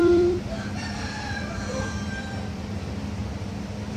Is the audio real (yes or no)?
no